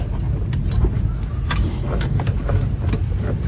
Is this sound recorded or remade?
recorded